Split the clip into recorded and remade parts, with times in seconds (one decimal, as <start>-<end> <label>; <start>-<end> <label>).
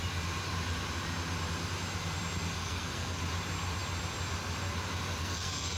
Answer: 0.0-2.6 recorded; 2.6-3.2 remade; 3.2-5.2 recorded; 5.2-5.8 remade